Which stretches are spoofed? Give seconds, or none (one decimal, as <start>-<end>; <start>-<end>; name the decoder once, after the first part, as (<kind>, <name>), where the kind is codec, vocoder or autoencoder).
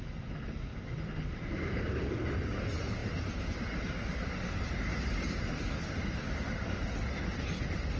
none